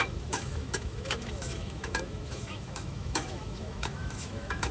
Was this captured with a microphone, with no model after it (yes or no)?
no